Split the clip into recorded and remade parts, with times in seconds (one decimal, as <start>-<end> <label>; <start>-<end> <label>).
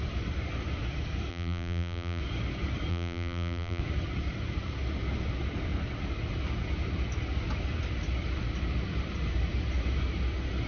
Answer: 0.0-1.3 recorded; 1.3-2.2 remade; 2.2-2.9 recorded; 2.9-3.8 remade; 3.8-10.7 recorded